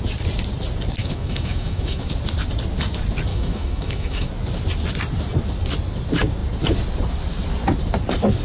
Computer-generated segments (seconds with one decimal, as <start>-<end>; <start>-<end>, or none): 1.0-2.1; 3.3-4.3